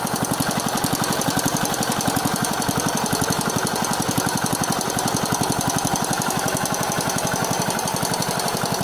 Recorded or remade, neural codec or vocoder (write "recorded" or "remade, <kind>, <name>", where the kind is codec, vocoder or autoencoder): recorded